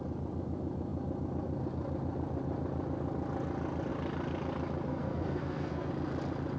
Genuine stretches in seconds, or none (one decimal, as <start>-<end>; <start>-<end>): 0.0-4.9; 5.9-6.6